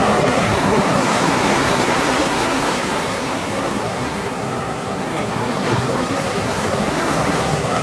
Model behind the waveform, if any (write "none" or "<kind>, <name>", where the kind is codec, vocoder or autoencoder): codec, SNAC